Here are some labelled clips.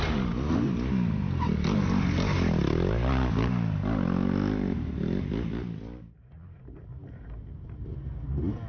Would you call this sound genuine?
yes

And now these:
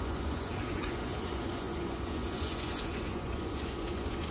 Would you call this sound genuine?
no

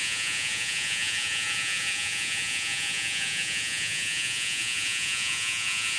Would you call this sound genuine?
no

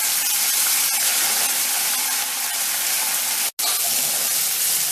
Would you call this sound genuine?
yes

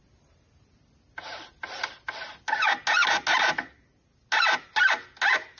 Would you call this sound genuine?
yes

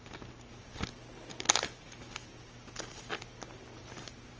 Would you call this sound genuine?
yes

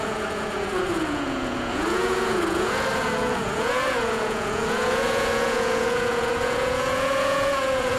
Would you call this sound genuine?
no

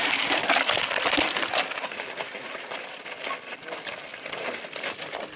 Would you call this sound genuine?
yes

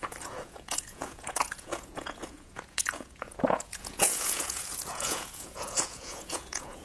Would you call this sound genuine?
no